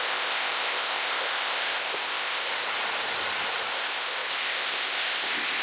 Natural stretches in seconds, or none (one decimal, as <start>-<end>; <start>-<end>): 2.5-3.7